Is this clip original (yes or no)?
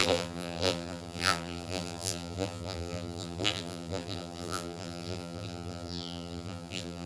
no